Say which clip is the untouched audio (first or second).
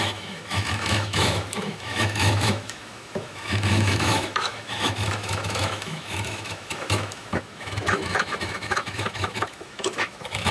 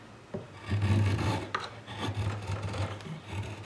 second